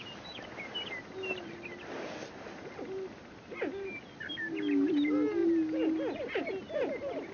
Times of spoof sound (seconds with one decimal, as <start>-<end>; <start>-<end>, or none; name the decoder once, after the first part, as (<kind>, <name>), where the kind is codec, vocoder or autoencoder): none